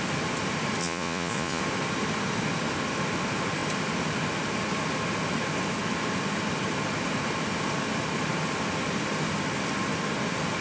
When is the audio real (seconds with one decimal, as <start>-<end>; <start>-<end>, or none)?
0.0-0.8; 1.6-10.6